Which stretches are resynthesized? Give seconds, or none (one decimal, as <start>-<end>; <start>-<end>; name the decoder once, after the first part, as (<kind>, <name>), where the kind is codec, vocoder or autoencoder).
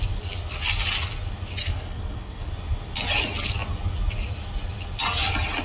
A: 1.6-2.5 (codec, SNAC)